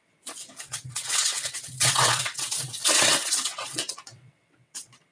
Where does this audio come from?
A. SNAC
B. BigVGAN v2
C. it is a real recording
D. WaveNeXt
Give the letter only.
D